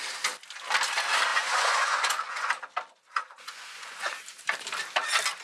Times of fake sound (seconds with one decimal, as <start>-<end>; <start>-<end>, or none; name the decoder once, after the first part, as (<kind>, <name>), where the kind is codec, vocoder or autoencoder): 1.3-2.5 (vocoder, Vocos); 3.2-4.1